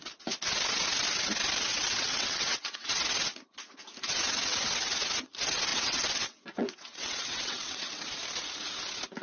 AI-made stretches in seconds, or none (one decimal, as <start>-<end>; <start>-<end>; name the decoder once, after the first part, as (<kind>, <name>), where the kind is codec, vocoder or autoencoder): 1.7-3.0 (vocoder, WaveNeXt); 5.7-8.0